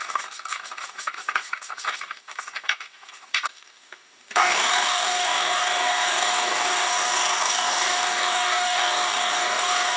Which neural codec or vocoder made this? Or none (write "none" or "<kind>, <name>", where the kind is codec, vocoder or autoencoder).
codec, DAC